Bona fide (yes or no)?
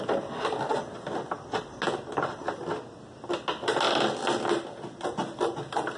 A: yes